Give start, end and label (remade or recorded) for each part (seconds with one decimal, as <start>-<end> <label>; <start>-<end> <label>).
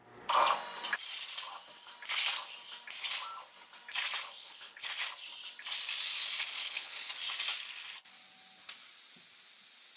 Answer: 0.0-4.4 recorded; 4.4-4.9 remade; 4.9-6.6 recorded; 6.6-7.1 remade; 7.1-10.0 recorded